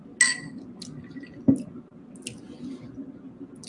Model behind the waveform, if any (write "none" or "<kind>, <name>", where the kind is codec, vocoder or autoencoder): none